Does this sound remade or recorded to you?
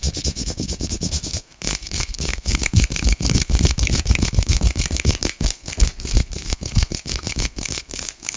remade